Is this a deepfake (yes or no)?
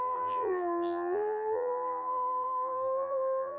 yes